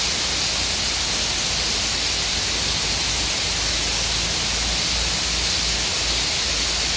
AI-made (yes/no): no